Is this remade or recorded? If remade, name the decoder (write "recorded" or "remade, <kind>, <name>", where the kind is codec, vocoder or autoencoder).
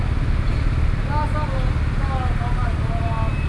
recorded